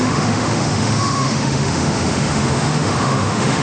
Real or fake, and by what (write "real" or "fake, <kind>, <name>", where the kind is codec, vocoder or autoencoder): fake, autoencoder, DAC-VAE